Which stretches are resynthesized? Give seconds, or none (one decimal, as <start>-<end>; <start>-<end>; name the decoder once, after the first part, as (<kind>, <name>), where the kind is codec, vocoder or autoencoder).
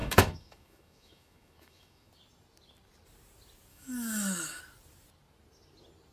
0.0-2.1 (autoencoder, DAC-VAE); 3.7-4.6